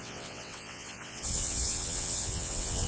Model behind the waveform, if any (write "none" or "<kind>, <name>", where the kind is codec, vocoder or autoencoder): vocoder, WaveNeXt